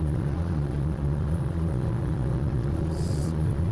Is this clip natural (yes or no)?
no